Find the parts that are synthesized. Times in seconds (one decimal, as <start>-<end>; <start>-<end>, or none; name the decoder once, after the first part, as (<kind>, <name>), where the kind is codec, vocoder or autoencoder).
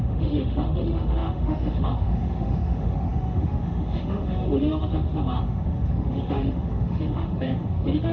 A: 0.0-8.1 (autoencoder, DAC-VAE)